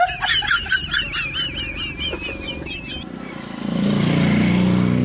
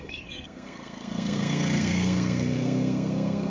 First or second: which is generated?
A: second